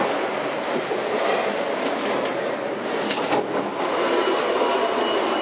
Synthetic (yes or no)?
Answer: no